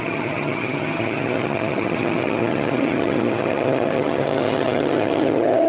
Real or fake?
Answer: fake